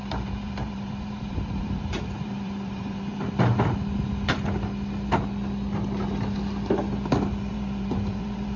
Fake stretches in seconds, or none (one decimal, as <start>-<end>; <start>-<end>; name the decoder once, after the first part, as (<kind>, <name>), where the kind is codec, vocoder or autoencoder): 0.0-3.1 (vocoder, BigVGAN v2); 7.5-8.6